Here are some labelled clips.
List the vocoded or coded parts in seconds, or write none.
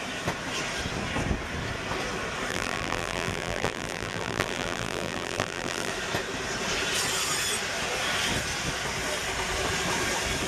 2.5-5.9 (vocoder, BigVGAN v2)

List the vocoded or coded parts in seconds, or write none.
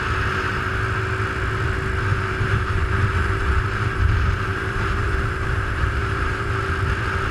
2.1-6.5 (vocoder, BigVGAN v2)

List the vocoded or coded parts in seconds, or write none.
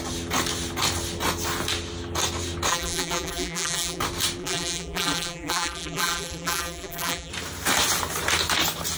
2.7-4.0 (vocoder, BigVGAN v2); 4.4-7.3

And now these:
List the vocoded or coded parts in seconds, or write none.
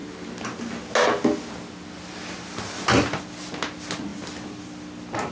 none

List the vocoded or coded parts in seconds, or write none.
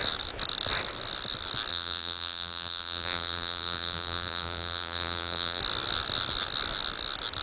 1.7-5.6 (vocoder, BigVGAN v2)